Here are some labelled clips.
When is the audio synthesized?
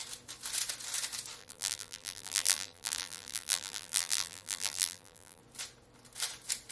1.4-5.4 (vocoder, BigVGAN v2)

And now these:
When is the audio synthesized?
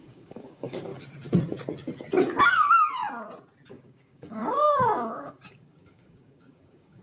0.0-0.9 (codec, DAC); 2.4-3.0; 3.7-7.0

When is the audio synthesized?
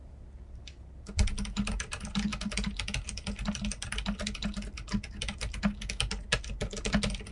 none